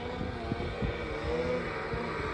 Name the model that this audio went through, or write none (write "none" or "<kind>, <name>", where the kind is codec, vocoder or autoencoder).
none